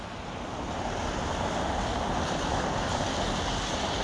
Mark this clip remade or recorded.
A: recorded